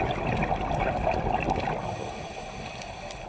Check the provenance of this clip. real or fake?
real